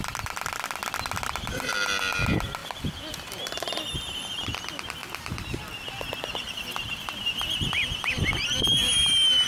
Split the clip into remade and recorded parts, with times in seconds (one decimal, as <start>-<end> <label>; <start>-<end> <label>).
0.0-0.8 remade; 0.8-1.4 recorded; 1.4-9.5 remade